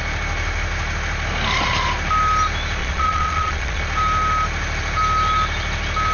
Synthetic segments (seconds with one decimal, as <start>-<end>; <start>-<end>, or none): 2.8-3.8